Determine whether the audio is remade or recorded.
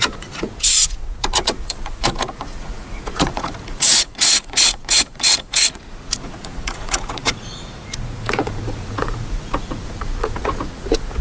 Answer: remade